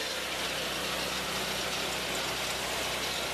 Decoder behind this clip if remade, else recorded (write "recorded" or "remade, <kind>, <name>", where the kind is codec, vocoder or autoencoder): recorded